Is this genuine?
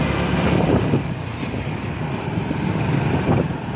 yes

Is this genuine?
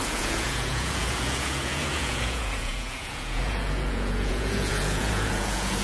no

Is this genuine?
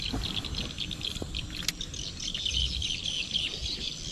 yes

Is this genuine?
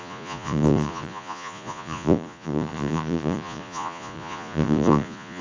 no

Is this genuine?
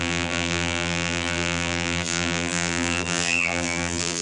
no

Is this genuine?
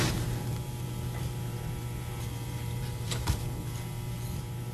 no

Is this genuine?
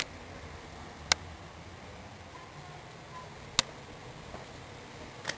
yes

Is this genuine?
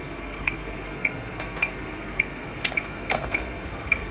no